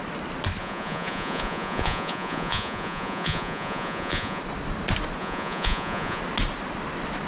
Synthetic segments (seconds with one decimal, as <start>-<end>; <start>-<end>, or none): 0.6-4.4; 5.2-6.2